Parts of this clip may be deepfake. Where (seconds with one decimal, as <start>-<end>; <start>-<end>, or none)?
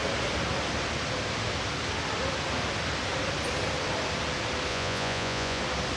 4.7-5.6